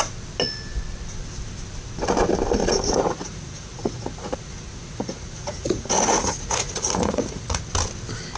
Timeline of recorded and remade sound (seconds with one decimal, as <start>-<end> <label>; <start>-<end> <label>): 0.0-2.6 recorded; 2.6-7.6 remade; 7.6-8.4 recorded

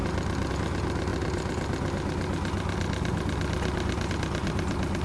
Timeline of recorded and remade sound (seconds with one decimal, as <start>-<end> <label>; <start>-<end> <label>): 0.0-5.0 recorded

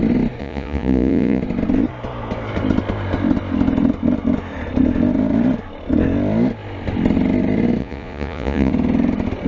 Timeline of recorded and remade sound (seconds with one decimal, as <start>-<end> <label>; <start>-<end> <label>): 0.0-0.4 recorded; 0.4-1.4 remade; 1.4-7.8 recorded; 7.8-8.7 remade; 8.7-9.5 recorded

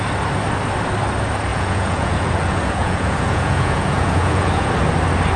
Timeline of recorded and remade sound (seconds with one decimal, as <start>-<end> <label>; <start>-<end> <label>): 0.0-1.5 recorded; 1.5-4.7 remade; 4.7-5.4 recorded

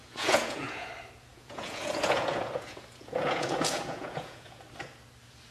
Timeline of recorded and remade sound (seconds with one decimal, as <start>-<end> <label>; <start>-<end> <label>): 0.0-0.9 remade; 0.9-1.3 recorded; 1.3-4.6 remade; 4.6-5.5 recorded

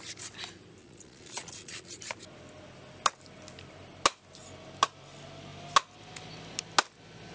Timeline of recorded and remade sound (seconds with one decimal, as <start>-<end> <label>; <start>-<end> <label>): 0.0-0.8 recorded; 0.8-1.9 remade; 1.9-7.3 recorded